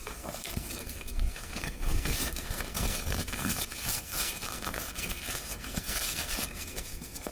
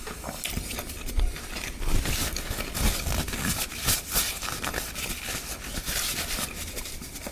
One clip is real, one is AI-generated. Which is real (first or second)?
second